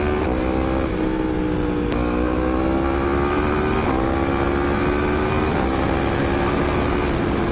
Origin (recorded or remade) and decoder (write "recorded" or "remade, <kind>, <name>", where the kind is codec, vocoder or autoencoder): recorded